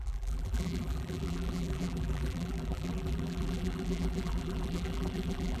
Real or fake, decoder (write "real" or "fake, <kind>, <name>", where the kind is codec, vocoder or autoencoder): fake, vocoder, BigVGAN v2